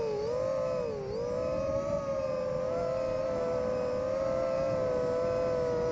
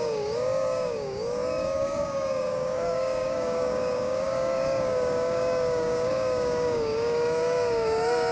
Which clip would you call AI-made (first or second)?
second